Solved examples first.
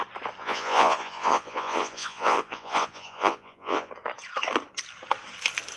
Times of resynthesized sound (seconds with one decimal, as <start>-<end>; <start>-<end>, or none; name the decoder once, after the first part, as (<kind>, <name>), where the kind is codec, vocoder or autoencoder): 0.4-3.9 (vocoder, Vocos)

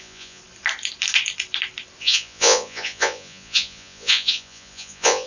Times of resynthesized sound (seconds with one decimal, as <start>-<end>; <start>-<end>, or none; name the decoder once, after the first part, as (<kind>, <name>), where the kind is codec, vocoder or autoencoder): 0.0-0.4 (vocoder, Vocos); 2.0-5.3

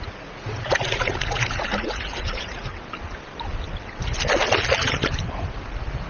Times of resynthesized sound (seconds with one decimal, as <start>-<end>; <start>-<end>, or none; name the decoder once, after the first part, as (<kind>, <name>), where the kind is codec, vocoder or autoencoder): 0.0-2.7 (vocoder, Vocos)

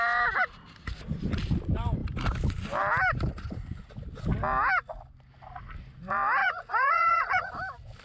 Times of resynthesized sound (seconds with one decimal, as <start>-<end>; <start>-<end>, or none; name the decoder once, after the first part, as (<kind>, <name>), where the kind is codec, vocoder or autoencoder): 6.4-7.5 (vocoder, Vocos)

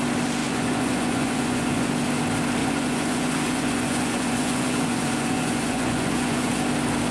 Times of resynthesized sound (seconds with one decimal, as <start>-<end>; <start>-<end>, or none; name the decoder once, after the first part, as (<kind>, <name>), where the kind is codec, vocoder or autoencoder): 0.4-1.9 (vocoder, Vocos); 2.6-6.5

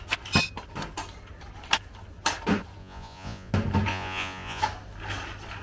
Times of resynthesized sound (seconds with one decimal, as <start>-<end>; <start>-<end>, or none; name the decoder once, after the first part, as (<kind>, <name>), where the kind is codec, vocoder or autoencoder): 2.8-3.5 (vocoder, Vocos); 3.9-4.6

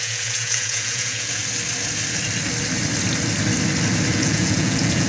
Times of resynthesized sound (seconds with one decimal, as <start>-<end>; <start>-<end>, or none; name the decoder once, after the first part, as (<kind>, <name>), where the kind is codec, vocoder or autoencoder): 0.0-1.4 (vocoder, Vocos); 4.1-5.1

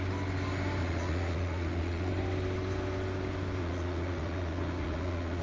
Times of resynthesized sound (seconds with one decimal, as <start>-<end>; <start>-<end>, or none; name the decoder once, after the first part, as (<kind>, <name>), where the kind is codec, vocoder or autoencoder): 0.8-2.1 (vocoder, Vocos); 3.6-5.4